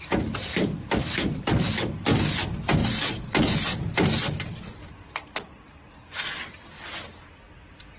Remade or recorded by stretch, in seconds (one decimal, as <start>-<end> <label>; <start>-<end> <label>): 0.0-8.0 recorded

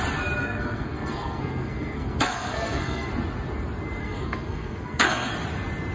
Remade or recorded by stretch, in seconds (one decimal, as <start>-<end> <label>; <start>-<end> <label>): 0.0-0.4 recorded; 0.4-3.1 remade; 3.1-4.0 recorded; 4.0-5.3 remade; 5.3-5.9 recorded

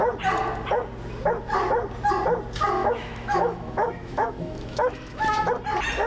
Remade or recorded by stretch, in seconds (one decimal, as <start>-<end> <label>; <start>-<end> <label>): 0.0-2.8 recorded; 2.8-5.5 remade; 5.5-6.1 recorded